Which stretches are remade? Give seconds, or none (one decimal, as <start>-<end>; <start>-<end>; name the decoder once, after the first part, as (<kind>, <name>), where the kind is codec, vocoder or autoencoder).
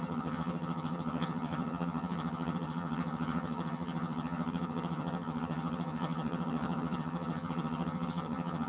0.0-8.7 (vocoder, HiFi-GAN)